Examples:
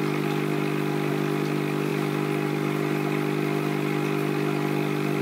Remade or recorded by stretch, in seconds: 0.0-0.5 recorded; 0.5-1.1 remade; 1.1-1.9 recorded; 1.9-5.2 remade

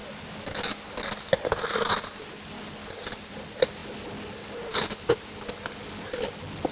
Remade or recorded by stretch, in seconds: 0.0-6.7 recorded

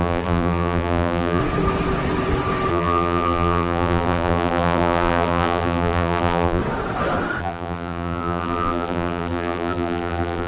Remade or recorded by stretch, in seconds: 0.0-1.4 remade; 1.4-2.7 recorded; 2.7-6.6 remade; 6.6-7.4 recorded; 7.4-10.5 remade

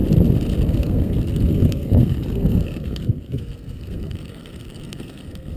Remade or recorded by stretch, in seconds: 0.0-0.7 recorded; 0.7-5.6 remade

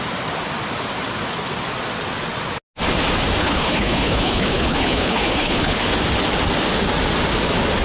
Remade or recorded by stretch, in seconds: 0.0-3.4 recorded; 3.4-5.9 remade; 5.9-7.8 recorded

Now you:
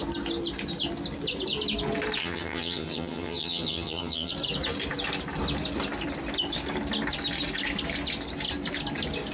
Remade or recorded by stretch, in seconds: 0.0-2.2 recorded; 2.2-4.3 remade; 4.3-9.3 recorded